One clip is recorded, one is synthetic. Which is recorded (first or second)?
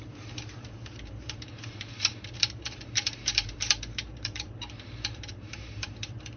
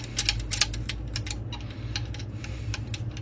second